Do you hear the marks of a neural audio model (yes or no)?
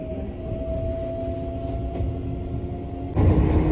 no